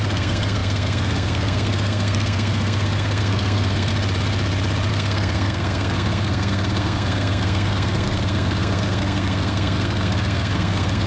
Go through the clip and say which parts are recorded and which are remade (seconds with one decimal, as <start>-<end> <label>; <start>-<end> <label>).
0.0-3.9 remade; 3.9-4.9 recorded; 4.9-11.1 remade